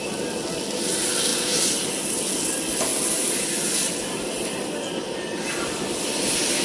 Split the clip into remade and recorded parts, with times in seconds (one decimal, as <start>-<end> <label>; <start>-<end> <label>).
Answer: 0.0-6.6 recorded